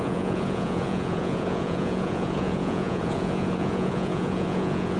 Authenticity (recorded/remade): remade